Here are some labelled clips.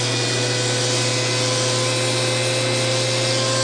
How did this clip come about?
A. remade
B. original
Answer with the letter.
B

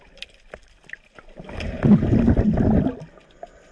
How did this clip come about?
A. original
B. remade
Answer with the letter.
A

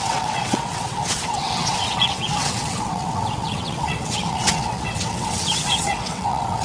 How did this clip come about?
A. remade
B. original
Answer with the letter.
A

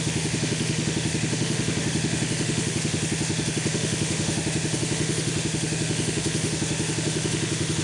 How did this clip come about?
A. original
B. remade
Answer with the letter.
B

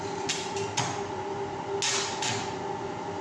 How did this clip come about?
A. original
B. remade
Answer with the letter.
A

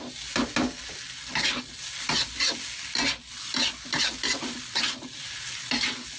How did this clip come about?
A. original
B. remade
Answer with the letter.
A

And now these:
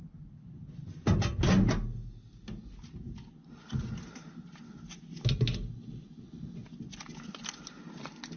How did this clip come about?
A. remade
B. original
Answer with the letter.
B